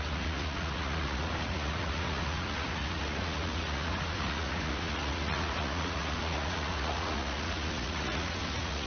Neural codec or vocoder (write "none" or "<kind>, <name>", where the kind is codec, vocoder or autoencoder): vocoder, Vocos